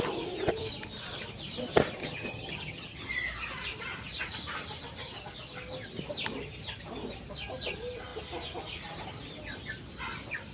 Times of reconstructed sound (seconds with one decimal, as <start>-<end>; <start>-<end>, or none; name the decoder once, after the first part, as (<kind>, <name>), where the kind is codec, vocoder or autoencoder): 2.0-3.1 (vocoder, HiFi-GAN)